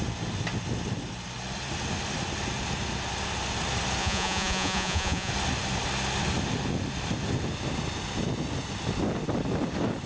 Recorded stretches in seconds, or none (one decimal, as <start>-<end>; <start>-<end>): 0.0-4.0; 5.3-10.1